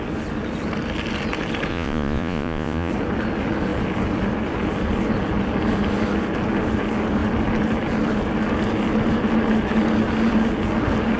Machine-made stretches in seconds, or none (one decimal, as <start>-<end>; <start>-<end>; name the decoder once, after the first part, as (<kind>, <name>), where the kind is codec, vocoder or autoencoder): 1.7-2.9 (vocoder, Vocos)